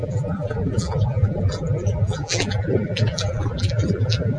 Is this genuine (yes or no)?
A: no